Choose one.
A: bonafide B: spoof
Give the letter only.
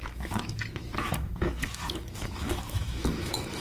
B